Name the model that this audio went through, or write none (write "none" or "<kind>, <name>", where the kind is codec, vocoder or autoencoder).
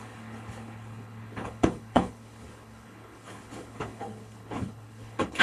codec, HILCodec